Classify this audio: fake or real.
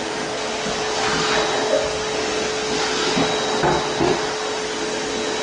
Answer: real